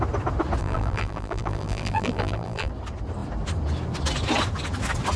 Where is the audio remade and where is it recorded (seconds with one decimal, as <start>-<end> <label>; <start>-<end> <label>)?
0.0-0.6 recorded; 0.6-2.7 remade; 2.7-5.2 recorded